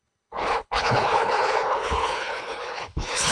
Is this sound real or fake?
fake